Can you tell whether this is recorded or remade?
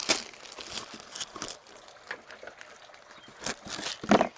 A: recorded